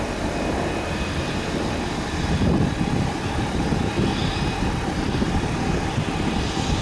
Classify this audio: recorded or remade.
remade